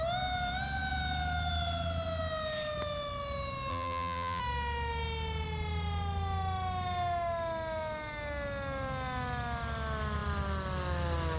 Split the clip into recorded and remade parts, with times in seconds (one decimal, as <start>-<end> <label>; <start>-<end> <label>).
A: 0.0-3.7 recorded; 3.7-4.4 remade; 4.4-11.4 recorded